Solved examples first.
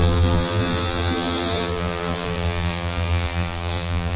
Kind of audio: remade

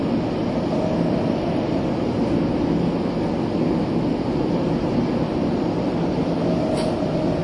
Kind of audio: recorded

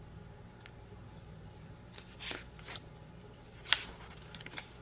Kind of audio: recorded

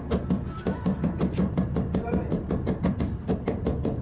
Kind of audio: remade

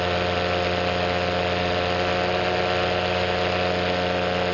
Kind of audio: recorded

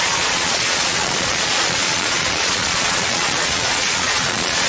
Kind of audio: remade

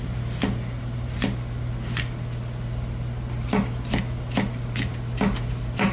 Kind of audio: recorded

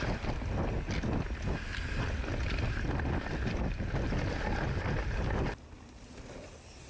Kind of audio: recorded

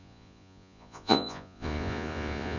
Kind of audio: remade